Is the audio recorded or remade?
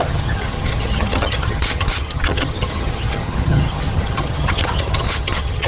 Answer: remade